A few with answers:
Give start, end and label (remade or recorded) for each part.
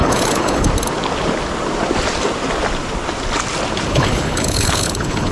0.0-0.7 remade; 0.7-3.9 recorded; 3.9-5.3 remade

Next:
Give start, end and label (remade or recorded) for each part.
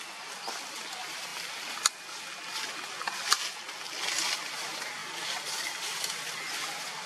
0.0-5.0 recorded; 5.0-7.1 remade